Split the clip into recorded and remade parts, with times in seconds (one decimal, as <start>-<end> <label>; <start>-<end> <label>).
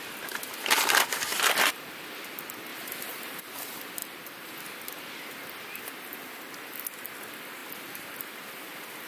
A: 0.0-2.7 recorded; 2.7-3.4 remade; 3.4-4.0 recorded; 4.0-4.5 remade; 4.5-9.1 recorded